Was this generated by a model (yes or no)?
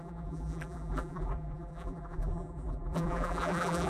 yes